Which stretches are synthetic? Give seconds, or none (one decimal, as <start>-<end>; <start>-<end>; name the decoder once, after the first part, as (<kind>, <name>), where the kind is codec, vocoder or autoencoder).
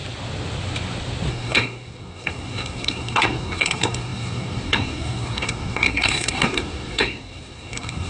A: 1.3-8.1 (codec, SNAC)